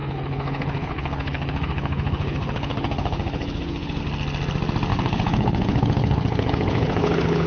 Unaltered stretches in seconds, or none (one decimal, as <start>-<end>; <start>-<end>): 4.0-4.9